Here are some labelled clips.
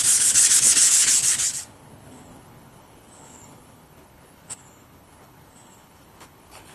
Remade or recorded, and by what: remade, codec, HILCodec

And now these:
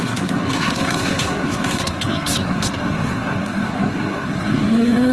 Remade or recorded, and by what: remade, codec, SNAC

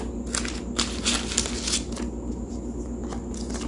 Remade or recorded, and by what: recorded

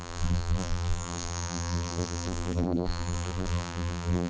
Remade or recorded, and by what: remade, vocoder, BigVGAN v2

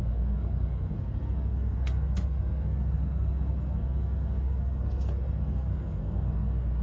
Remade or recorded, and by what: remade, codec, SNAC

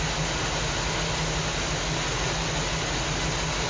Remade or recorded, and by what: recorded